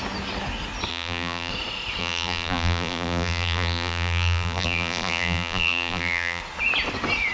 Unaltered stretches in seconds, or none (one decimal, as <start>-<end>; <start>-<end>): 0.0-0.9; 1.5-2.0; 6.4-7.3